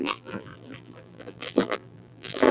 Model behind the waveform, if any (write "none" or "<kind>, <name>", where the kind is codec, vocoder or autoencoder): vocoder, BigVGAN v2